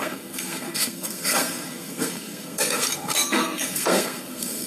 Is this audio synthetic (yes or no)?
yes